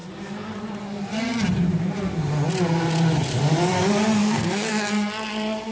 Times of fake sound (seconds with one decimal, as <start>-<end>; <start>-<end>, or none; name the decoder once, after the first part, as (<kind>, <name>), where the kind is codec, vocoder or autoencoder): 4.2-4.7 (codec, SNAC)